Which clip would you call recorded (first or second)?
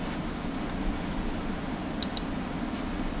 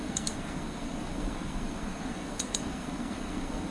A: first